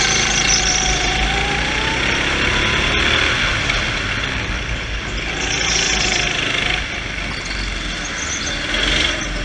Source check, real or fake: real